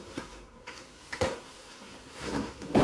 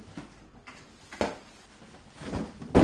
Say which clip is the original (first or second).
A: second